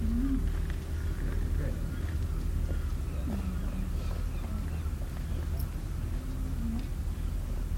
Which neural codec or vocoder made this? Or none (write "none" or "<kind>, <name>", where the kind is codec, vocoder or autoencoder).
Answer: none